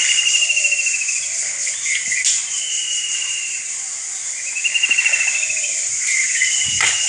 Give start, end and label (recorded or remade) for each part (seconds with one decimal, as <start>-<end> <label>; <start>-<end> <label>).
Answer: 0.0-2.4 recorded; 2.4-3.6 remade; 3.6-4.7 recorded; 4.7-7.1 remade